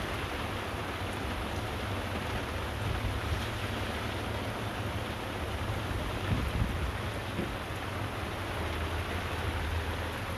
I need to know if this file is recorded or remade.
recorded